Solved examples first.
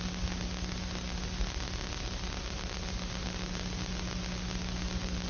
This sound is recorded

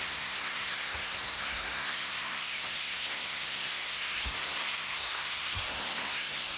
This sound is remade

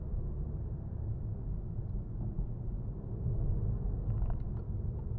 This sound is recorded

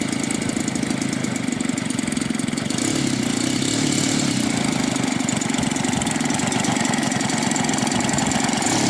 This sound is recorded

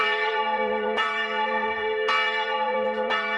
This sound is remade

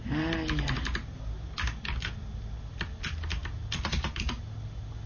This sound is recorded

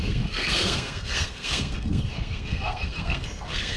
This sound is remade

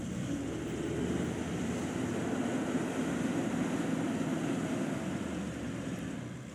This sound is recorded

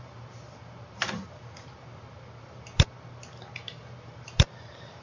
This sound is remade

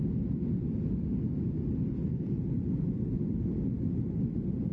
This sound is recorded